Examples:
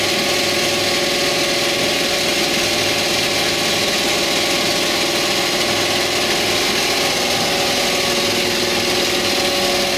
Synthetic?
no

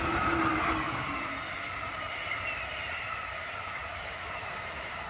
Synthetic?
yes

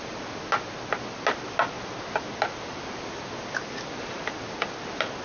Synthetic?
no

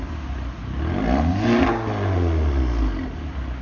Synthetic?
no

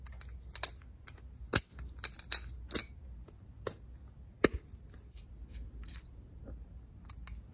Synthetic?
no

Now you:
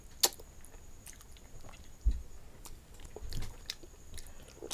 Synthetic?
no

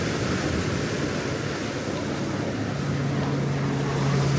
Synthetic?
no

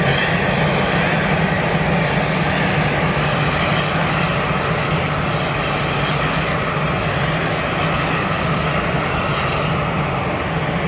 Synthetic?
no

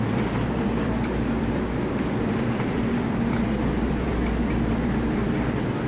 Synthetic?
yes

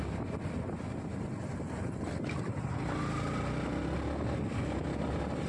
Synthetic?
no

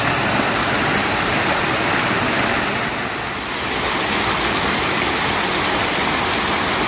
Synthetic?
no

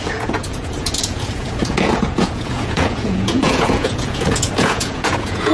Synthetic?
yes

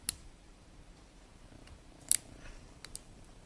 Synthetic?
yes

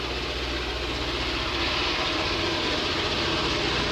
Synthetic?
no